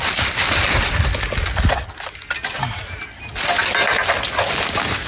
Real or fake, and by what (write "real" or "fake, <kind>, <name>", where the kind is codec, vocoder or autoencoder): real